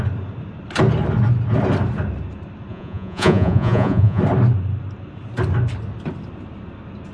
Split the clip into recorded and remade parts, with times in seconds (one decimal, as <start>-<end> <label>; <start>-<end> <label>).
0.0-2.7 recorded; 2.7-4.2 remade; 4.2-7.1 recorded